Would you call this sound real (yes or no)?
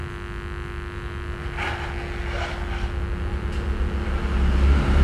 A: yes